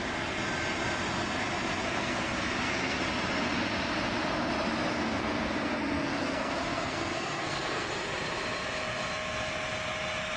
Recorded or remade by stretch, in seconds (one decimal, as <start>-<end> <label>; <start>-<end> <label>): 0.0-1.8 recorded; 1.8-3.0 remade; 3.0-4.9 recorded; 4.9-7.9 remade; 7.9-10.4 recorded